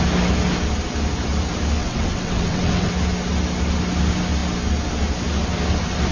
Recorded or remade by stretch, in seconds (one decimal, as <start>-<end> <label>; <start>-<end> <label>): 0.0-1.8 recorded; 1.8-2.9 remade; 2.9-6.1 recorded